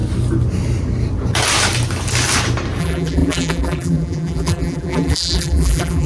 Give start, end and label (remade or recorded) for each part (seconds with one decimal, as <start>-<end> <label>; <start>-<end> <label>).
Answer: 0.0-2.8 recorded; 2.8-6.1 remade